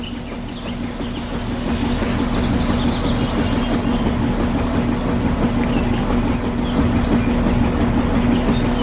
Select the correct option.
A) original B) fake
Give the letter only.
A